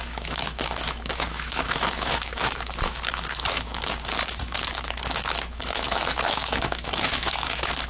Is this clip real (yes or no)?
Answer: no